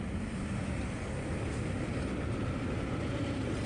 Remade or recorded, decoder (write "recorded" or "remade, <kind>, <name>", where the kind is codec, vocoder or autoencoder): remade, vocoder, BigVGAN v2